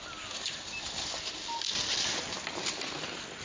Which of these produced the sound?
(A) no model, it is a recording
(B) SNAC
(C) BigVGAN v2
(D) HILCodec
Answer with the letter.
A